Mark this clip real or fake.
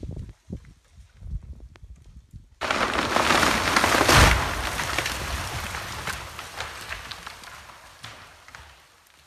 real